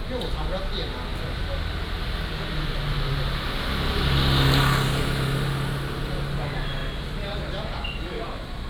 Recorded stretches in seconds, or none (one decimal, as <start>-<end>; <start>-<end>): 0.0-8.7